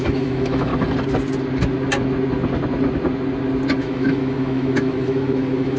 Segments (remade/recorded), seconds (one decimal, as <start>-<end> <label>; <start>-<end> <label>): 0.0-0.7 remade; 0.7-3.8 recorded; 3.8-5.8 remade